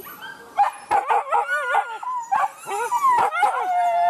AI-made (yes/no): no